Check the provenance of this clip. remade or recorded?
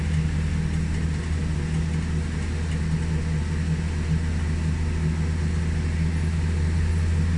recorded